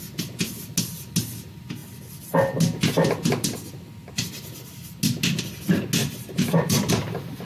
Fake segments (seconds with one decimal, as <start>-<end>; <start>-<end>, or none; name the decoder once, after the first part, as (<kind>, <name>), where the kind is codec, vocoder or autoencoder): 6.0-6.9 (vocoder, BigVGAN v2)